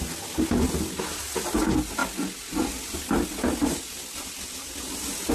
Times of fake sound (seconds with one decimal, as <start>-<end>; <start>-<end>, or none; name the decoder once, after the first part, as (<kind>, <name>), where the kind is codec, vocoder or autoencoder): none